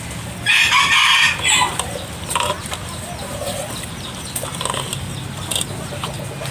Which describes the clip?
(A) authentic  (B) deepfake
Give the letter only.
A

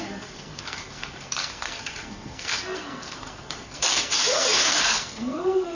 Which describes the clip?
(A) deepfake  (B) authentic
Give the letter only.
A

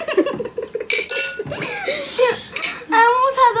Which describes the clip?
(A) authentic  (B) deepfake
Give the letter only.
A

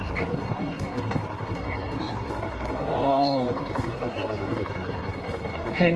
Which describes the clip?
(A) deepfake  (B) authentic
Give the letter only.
A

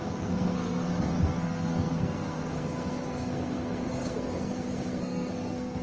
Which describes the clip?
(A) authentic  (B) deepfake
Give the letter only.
B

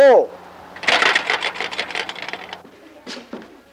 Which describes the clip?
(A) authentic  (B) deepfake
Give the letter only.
A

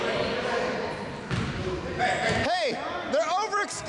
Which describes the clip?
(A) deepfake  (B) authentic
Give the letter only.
B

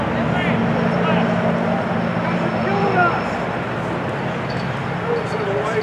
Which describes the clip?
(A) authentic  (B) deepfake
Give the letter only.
A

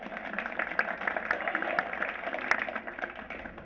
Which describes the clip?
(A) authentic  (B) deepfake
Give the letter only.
A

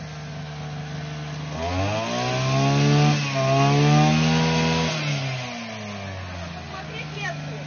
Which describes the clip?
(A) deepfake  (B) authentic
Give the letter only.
B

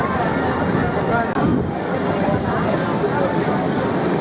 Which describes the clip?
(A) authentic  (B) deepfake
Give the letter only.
A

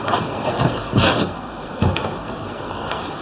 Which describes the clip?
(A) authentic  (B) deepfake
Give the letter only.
B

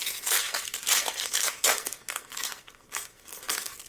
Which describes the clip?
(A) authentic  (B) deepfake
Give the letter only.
B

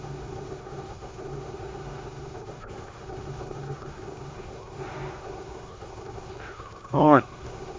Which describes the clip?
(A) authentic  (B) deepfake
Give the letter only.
B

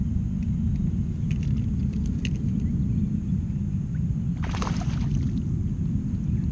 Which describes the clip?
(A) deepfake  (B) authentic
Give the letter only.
B